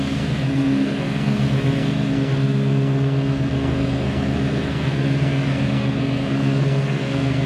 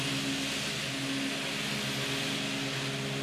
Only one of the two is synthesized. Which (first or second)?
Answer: first